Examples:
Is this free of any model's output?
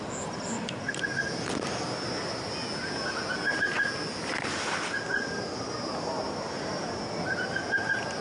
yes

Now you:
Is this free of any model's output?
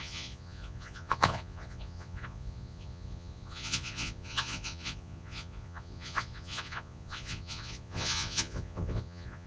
no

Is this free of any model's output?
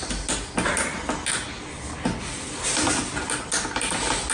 yes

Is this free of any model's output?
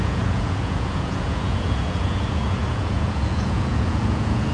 no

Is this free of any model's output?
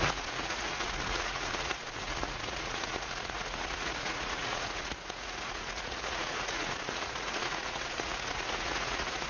no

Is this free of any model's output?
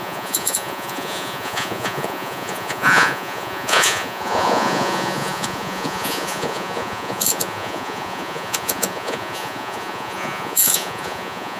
no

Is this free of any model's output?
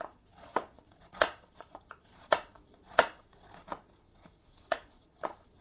no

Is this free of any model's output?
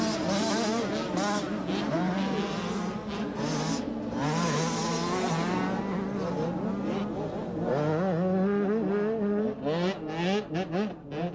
yes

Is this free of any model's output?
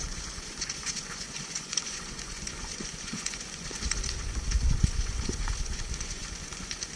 no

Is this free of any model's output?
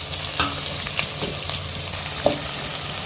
yes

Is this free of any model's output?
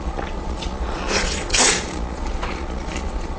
no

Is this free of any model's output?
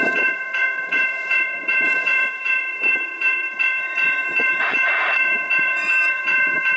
no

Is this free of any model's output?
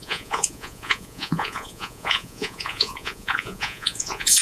no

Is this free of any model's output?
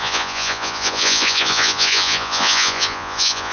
no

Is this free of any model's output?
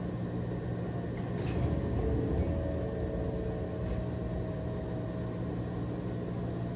yes